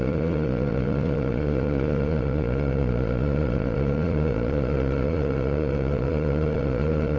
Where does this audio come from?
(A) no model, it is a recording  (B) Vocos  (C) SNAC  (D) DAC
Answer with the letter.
B